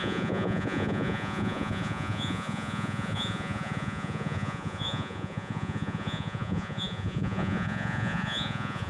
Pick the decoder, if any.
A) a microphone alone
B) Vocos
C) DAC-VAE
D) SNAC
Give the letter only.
B